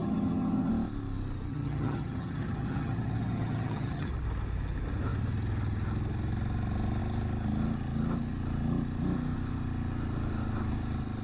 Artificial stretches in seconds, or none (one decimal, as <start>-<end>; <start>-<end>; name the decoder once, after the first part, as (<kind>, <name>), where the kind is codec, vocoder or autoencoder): 0.0-0.7 (vocoder, HiFi-GAN); 1.5-4.1